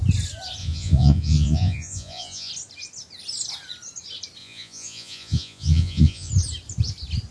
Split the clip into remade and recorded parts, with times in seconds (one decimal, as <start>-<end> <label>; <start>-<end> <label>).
0.0-0.6 recorded; 0.6-2.5 remade; 2.5-4.4 recorded; 4.4-6.3 remade; 6.3-7.3 recorded